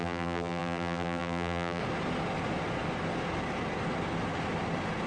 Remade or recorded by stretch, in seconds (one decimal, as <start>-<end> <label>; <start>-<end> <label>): 0.0-1.8 remade; 1.8-5.1 recorded